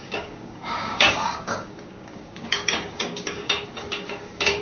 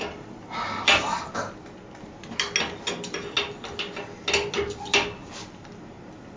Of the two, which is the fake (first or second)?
first